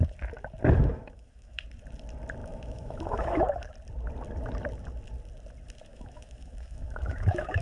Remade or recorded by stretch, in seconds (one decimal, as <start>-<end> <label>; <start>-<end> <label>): 0.0-0.9 recorded; 0.9-1.6 remade; 1.6-2.4 recorded; 2.4-3.7 remade; 3.7-5.9 recorded; 5.9-7.6 remade